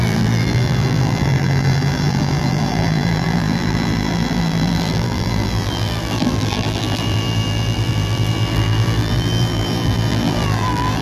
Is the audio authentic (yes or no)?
no